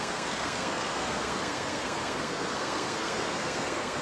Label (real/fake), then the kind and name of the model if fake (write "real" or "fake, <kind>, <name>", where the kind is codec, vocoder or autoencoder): fake, codec, SNAC